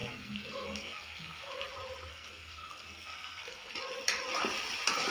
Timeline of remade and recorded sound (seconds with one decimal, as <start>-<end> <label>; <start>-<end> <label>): 0.0-1.6 remade; 1.6-2.1 recorded; 2.1-3.7 remade; 3.7-5.1 recorded